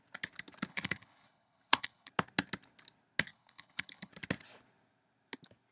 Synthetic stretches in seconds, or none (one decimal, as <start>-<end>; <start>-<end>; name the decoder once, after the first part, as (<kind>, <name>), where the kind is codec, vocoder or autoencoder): 0.7-2.1 (codec, HILCodec); 3.3-4.1